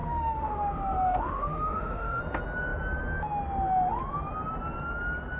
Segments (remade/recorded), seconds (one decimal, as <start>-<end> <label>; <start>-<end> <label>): 0.0-2.2 remade; 2.2-5.4 recorded